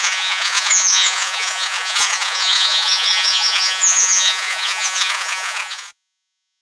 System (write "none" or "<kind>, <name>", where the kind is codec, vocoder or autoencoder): vocoder, Vocos